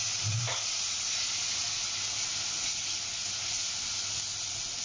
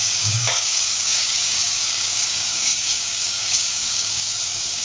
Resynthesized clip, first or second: second